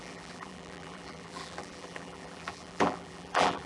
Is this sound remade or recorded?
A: remade